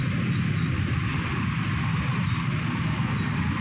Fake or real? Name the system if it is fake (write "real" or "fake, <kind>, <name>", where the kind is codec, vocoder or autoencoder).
real